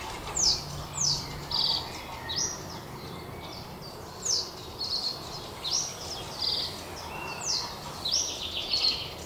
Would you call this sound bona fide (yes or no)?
yes